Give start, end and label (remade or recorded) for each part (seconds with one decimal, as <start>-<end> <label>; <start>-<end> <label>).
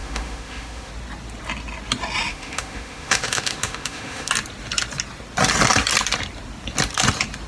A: 0.0-0.9 remade; 0.9-2.3 recorded; 2.3-4.3 remade; 4.3-7.5 recorded